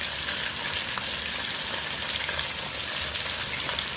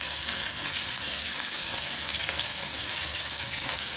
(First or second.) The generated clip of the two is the second